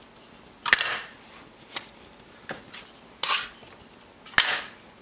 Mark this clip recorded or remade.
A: recorded